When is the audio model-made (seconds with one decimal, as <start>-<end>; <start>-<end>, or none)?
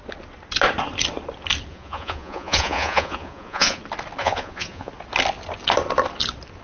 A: 1.7-3.8; 4.2-4.9